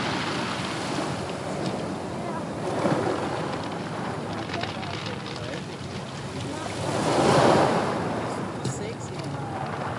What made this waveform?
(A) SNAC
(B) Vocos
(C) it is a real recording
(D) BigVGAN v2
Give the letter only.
C